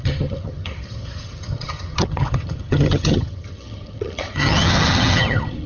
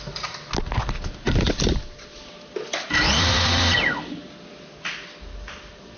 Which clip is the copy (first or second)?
first